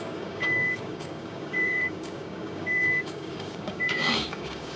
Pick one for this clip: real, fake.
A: fake